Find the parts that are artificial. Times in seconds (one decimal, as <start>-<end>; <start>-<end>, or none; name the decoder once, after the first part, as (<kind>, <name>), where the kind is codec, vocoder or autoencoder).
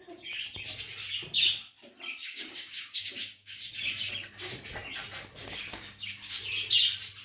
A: 2.1-3.6 (codec, DAC); 5.4-6.4